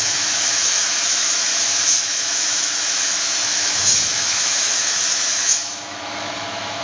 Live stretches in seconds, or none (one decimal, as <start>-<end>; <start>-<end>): 1.5-2.0